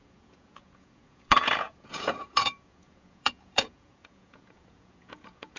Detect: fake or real fake